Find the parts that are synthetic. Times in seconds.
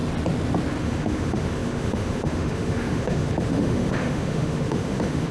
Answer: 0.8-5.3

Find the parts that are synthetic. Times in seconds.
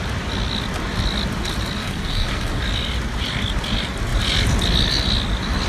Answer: 1.8-2.6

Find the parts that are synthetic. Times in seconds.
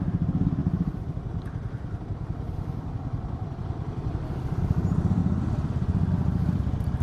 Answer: 0.0-5.2; 6.1-7.0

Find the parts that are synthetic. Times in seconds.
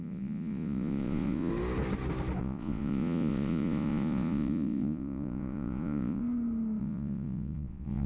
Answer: 0.0-1.5; 2.4-6.2; 6.8-8.1